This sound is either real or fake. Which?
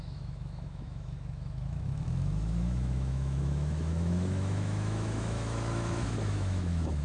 fake